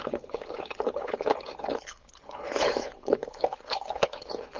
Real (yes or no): no